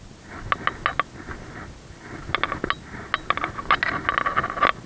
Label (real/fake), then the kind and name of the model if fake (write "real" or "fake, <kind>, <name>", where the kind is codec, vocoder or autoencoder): real